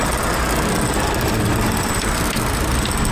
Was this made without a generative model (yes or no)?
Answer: yes